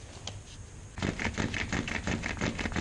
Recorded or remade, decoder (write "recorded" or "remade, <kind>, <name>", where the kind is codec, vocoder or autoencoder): recorded